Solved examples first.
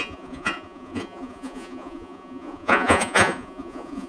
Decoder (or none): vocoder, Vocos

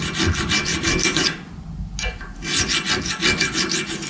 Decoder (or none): none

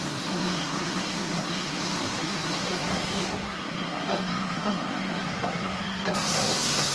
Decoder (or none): codec, SNAC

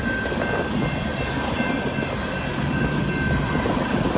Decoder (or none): none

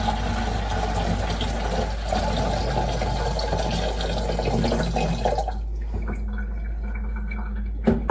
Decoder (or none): none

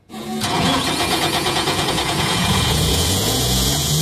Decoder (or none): vocoder, Vocos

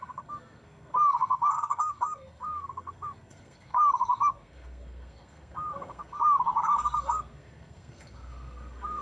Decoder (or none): codec, SNAC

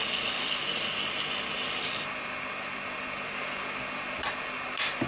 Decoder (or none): none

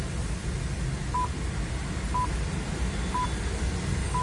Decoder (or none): none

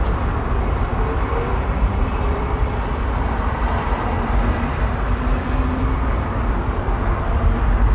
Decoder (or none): vocoder, BigVGAN v2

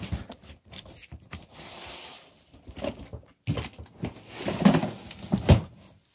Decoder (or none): none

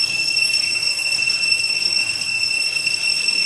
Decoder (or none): codec, SNAC